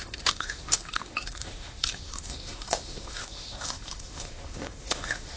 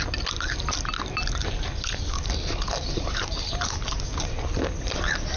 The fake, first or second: first